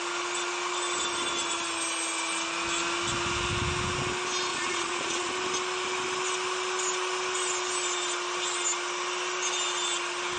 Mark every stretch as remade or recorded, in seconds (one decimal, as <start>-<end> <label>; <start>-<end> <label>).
0.0-4.5 recorded; 4.5-5.3 remade; 5.3-10.4 recorded